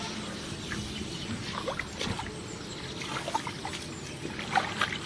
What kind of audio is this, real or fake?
real